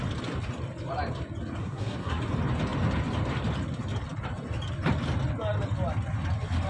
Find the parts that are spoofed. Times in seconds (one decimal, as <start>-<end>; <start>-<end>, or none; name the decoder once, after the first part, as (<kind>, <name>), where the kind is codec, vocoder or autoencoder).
1.6-2.2 (codec, SNAC)

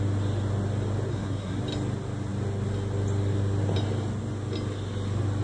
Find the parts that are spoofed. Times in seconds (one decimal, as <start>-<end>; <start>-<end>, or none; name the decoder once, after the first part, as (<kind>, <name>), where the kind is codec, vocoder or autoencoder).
1.1-1.6 (codec, SNAC)

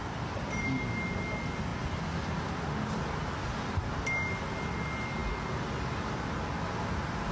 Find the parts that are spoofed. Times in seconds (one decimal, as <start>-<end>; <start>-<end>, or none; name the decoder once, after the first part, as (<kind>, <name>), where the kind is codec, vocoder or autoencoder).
none